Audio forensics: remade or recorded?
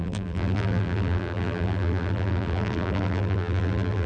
remade